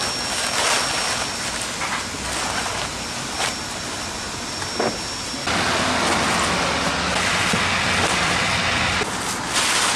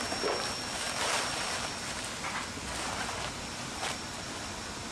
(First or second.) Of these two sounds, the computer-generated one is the second